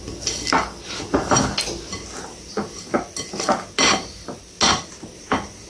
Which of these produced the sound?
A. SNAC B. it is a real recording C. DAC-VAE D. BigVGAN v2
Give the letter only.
B